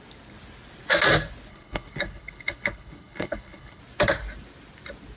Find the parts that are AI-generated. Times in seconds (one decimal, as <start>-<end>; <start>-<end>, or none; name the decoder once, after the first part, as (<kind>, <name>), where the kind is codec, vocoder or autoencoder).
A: 1.5-3.8 (codec, HILCodec)